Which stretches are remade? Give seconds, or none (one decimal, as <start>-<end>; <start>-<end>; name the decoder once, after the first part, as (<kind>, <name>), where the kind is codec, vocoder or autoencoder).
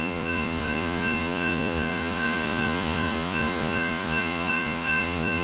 0.0-5.4 (vocoder, Vocos)